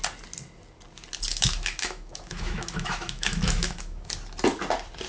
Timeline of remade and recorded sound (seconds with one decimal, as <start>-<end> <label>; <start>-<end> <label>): 0.0-1.3 recorded; 1.3-4.1 remade; 4.1-5.1 recorded